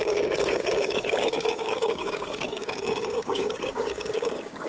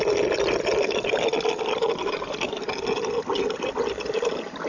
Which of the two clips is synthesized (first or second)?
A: first